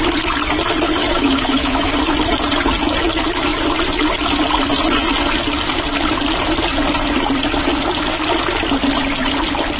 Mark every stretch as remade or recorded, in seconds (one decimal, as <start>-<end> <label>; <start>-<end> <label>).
0.0-1.0 recorded; 1.0-1.9 remade; 1.9-9.8 recorded